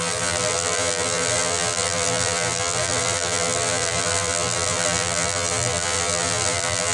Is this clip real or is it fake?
fake